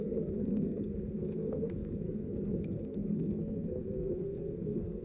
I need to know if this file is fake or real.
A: fake